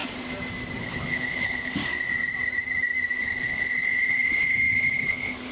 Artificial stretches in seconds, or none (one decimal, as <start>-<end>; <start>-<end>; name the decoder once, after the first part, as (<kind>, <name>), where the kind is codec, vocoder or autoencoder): 0.8-1.8 (codec, HILCodec); 3.2-5.5